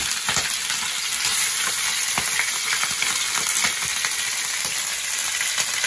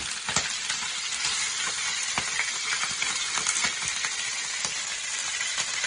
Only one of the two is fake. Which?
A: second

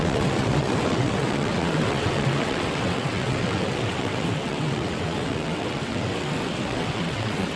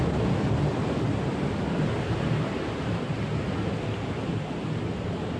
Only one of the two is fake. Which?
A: first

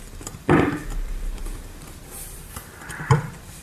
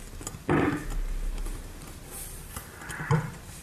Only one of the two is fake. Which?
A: first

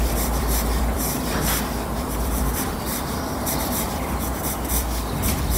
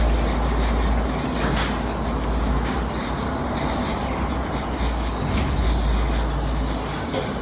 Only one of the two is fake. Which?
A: first